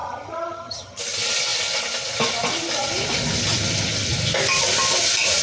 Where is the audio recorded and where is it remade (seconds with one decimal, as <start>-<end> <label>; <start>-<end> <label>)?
0.0-1.0 remade; 1.0-5.4 recorded